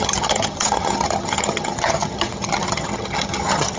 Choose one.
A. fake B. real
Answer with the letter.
A